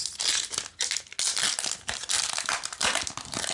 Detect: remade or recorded recorded